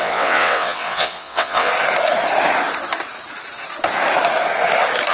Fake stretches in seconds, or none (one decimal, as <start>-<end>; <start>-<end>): 0.0-1.7